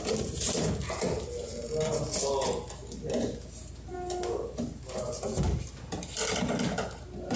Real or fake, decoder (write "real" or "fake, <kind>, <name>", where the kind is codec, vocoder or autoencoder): real